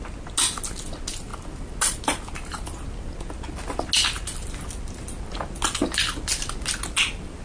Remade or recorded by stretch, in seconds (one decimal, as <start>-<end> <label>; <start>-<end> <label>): 0.0-7.4 recorded